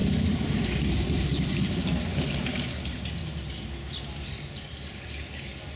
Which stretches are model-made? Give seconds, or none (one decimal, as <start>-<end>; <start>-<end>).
0.0-0.6; 2.1-2.7